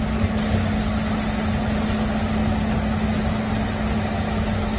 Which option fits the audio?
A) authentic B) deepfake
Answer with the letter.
A